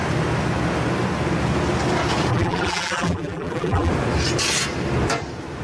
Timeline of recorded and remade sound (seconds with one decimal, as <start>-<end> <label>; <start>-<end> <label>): 0.0-2.3 recorded; 2.3-3.9 remade; 3.9-5.6 recorded